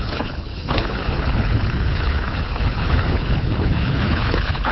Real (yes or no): no